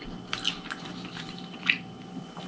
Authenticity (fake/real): real